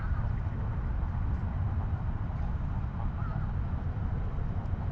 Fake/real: real